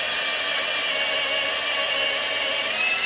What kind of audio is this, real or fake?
real